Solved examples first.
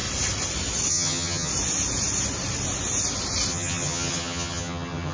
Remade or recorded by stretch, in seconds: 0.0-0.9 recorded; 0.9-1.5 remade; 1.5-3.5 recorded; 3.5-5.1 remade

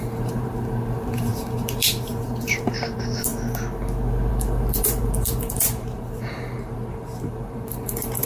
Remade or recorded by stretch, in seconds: 0.0-3.3 remade; 3.3-4.3 recorded; 4.3-8.3 remade

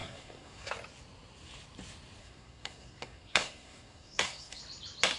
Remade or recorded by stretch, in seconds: 0.0-0.7 remade; 0.7-2.2 recorded; 2.2-4.6 remade; 4.6-5.2 recorded

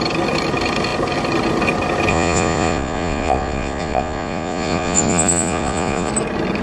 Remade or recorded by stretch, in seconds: 0.0-2.1 recorded; 2.1-6.1 remade; 6.1-6.6 recorded

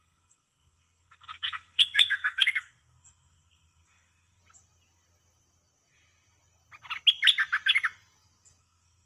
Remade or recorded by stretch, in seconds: 0.0-4.4 remade; 4.4-8.6 recorded; 8.6-9.1 remade